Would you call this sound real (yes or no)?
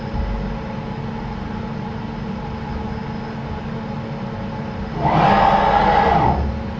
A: yes